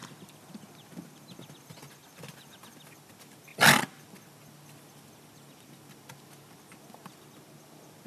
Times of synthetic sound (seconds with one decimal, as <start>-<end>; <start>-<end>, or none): none